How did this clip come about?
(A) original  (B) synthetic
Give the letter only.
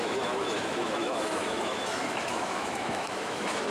B